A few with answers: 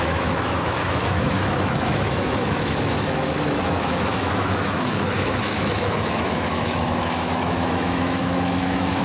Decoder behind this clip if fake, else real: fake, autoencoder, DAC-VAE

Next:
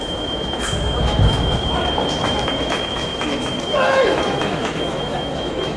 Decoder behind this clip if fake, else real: fake, autoencoder, DAC-VAE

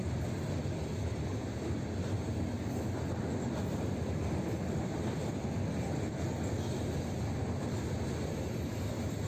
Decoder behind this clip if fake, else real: real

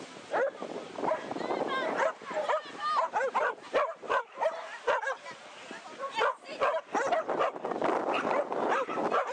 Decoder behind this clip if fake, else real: real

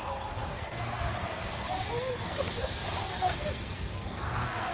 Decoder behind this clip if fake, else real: fake, codec, SNAC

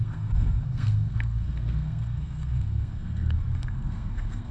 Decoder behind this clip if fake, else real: fake, codec, SNAC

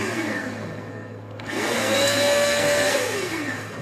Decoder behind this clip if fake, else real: fake, codec, SNAC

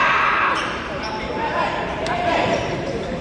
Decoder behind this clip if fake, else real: fake, vocoder, BigVGAN v2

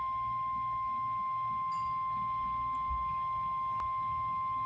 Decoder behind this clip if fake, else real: real